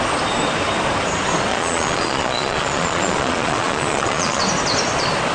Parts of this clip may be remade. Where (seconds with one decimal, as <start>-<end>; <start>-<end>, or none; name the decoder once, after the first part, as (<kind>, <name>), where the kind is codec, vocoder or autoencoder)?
1.5-4.4 (vocoder, Vocos)